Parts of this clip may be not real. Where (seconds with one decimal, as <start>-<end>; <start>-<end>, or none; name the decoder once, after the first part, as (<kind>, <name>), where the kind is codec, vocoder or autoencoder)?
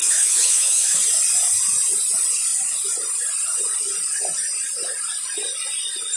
0.0-1.0 (autoencoder, DAC-VAE)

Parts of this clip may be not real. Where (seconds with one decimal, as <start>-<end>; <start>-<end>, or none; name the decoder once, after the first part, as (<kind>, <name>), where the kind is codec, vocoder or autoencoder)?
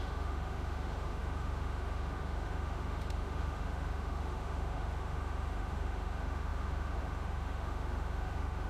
0.0-8.7 (autoencoder, DAC-VAE)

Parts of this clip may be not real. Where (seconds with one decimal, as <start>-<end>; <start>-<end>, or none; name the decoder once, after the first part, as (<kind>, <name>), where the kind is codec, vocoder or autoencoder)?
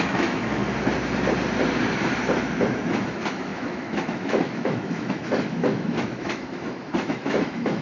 0.0-0.6 (autoencoder, DAC-VAE); 2.9-7.8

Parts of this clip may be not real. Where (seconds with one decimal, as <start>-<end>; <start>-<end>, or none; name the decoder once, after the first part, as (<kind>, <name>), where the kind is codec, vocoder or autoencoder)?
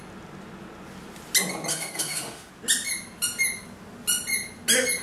1.7-2.5 (autoencoder, DAC-VAE)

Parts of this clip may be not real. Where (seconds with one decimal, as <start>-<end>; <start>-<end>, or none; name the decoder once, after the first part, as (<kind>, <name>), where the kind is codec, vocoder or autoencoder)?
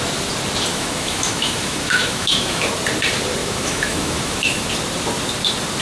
0.7-2.7 (autoencoder, DAC-VAE); 3.4-4.7